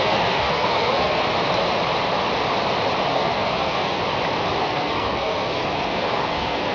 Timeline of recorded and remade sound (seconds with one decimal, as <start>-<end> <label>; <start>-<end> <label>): 0.0-1.2 remade; 1.2-3.1 recorded; 3.1-4.0 remade; 4.0-4.6 recorded; 4.6-6.7 remade